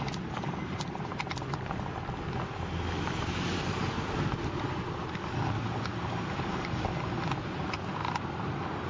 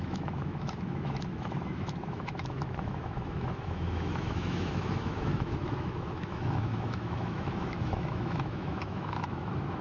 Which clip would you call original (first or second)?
first